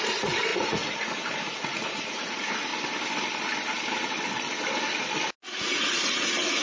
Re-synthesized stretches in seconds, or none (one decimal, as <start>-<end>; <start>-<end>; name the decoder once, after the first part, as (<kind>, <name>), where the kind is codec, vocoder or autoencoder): 0.0-2.7 (vocoder, Vocos); 5.4-6.6